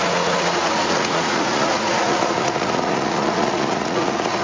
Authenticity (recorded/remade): remade